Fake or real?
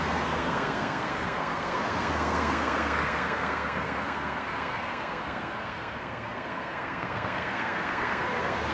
fake